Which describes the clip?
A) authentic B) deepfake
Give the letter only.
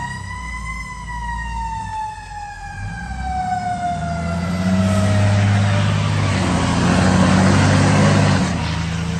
A